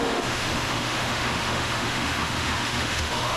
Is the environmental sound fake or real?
fake